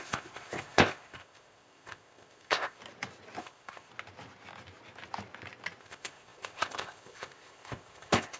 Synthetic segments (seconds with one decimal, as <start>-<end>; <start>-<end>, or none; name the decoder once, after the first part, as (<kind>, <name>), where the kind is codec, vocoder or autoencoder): 0.0-2.8 (codec, ZipCodec); 3.4-3.9; 5.8-8.4